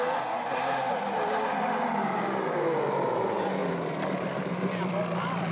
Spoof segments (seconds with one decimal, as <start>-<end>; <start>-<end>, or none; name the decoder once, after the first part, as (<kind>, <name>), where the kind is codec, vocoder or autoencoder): 3.6-4.9 (vocoder, BigVGAN v2)